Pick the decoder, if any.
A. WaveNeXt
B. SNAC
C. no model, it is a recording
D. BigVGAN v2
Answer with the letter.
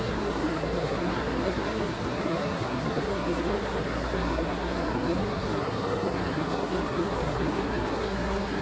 B